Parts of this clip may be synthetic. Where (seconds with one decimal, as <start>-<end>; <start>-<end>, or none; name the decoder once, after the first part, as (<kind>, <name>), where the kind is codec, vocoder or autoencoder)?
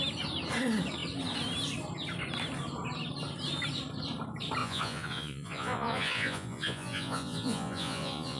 4.6-8.4 (vocoder, Vocos)